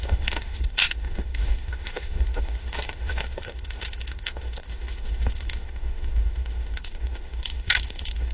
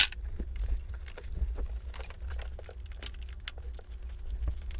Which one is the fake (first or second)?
first